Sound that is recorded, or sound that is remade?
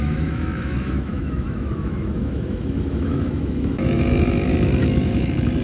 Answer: remade